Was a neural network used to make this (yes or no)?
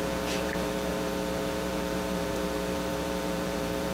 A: yes